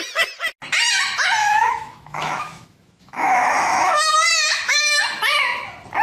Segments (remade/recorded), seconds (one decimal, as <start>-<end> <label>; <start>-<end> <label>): 0.0-1.4 recorded; 1.4-5.0 remade; 5.0-6.0 recorded